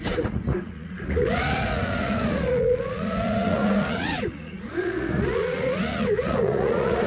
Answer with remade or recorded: remade